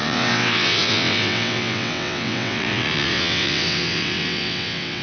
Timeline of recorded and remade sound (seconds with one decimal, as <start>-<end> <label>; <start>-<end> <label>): 0.0-5.0 remade